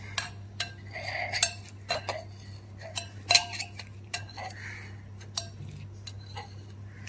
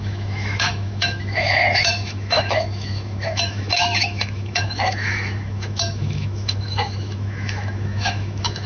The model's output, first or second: second